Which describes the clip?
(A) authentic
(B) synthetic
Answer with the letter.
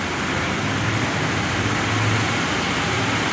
A